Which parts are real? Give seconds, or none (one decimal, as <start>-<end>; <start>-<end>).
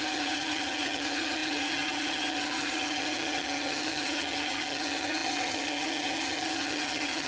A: none